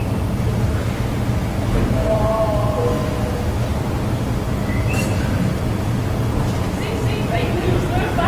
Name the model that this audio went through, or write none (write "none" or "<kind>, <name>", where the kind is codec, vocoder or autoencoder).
none